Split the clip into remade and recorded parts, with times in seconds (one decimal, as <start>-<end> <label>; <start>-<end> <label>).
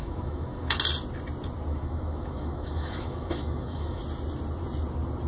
0.0-0.8 remade; 0.8-1.7 recorded; 1.7-4.0 remade; 4.0-5.3 recorded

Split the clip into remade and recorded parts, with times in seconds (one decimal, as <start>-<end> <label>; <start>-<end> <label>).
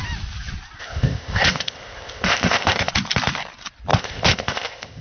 0.0-0.8 recorded; 0.8-2.9 remade; 2.9-3.9 recorded; 3.9-5.0 remade